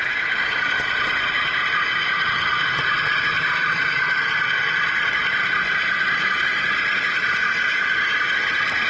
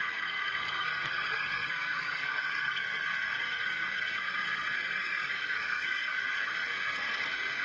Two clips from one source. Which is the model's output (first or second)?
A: second